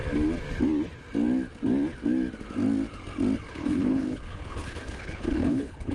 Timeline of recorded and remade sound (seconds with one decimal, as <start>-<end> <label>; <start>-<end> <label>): 0.0-3.5 recorded; 3.5-5.9 remade